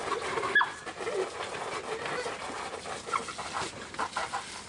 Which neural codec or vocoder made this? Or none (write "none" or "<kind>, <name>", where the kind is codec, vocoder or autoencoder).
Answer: none